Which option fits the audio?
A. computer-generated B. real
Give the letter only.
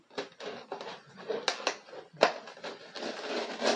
B